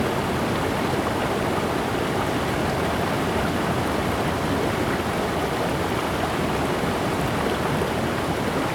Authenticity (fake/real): real